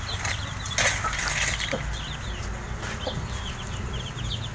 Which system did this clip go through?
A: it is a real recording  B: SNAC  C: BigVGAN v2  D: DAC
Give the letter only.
A